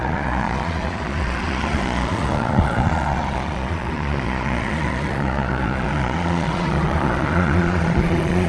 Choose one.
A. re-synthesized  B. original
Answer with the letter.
A